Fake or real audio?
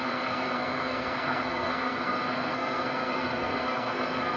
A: fake